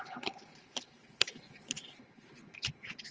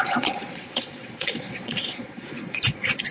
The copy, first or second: second